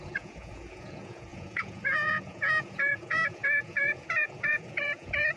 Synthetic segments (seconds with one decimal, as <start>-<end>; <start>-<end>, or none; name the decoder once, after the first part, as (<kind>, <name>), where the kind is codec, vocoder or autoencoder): 0.0-5.4 (vocoder, Vocos)